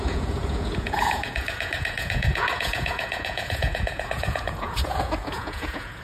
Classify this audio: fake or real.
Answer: fake